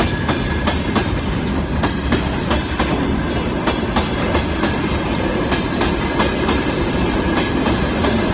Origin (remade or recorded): recorded